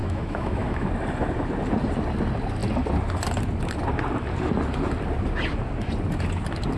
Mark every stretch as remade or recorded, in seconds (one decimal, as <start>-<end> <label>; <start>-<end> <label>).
0.0-0.9 remade; 0.9-6.8 recorded